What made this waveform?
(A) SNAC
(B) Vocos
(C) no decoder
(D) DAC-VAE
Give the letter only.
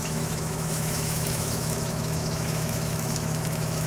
D